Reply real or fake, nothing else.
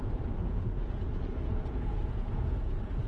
fake